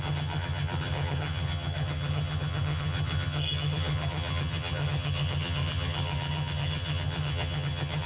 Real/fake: fake